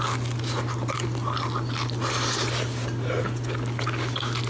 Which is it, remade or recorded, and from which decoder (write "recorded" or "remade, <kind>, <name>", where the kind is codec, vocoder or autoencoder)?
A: recorded